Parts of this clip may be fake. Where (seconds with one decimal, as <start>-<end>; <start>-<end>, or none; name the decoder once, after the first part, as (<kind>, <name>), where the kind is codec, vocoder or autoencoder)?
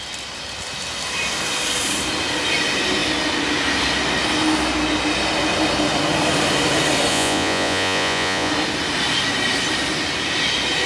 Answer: 7.1-8.5 (vocoder, Vocos)